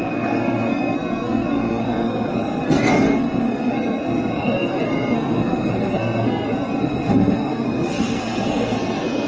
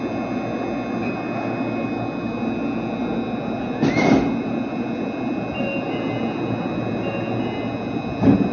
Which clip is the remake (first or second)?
first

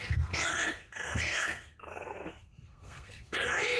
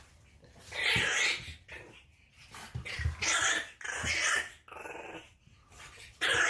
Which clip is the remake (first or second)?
first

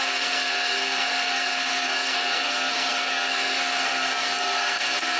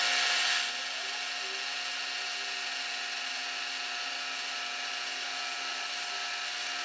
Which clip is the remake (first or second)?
first